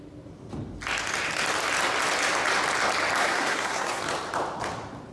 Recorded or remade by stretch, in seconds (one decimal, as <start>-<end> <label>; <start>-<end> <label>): 0.0-3.2 recorded; 3.2-4.0 remade; 4.0-5.1 recorded